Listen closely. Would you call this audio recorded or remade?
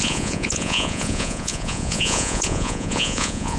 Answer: remade